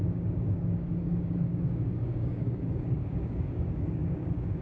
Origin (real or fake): fake